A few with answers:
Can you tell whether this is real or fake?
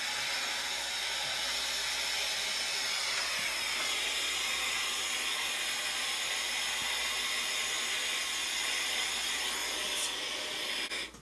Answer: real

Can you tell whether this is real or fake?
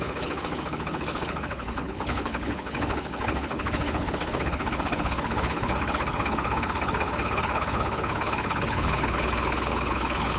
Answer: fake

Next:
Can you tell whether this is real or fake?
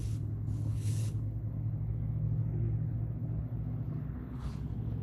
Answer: fake